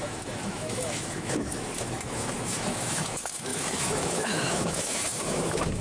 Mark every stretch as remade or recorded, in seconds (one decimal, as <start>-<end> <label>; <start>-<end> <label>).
0.0-5.8 remade